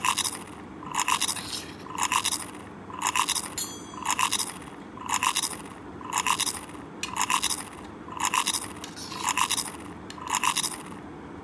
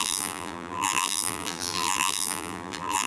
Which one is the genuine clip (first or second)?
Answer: first